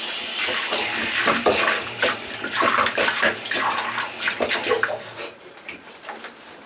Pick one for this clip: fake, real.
real